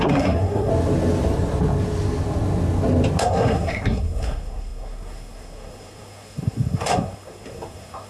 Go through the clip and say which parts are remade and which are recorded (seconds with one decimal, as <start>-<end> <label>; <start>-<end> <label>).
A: 0.0-0.7 remade; 0.7-3.2 recorded; 3.2-8.1 remade